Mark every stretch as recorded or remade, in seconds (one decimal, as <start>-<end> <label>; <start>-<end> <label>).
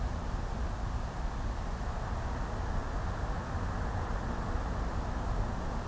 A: 0.0-5.9 recorded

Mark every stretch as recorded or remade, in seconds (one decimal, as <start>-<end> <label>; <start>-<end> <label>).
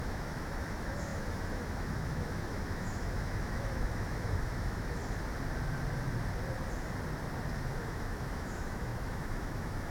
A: 0.0-5.0 remade; 5.0-7.8 recorded; 7.8-9.9 remade